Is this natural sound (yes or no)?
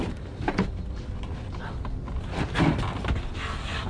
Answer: yes